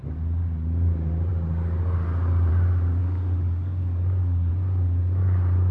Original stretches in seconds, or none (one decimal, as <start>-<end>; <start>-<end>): 0.0-3.0; 4.5-5.7